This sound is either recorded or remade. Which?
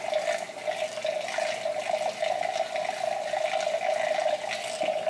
recorded